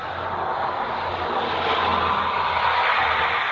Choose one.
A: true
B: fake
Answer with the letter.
A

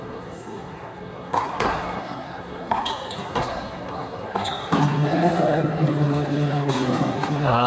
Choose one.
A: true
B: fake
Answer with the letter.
B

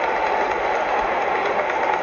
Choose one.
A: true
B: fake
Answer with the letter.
A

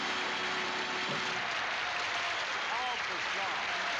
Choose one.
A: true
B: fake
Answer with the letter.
B